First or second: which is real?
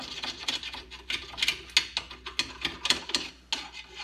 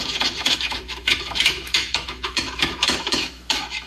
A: first